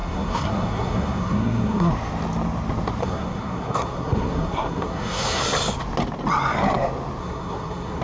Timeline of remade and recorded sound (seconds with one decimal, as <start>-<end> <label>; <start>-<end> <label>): 0.0-1.9 remade; 1.9-3.0 recorded; 3.0-5.4 remade; 5.4-7.2 recorded; 7.2-8.0 remade